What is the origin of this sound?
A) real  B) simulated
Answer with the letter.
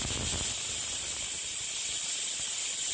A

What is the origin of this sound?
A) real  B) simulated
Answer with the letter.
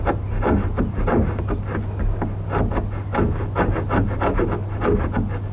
A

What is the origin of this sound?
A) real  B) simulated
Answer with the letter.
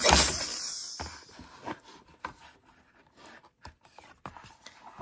A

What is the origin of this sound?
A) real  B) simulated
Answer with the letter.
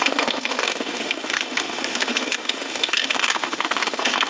B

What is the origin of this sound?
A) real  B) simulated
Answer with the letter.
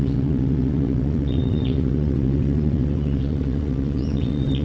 B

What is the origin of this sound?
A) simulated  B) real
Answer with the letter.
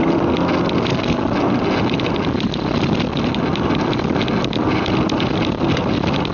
B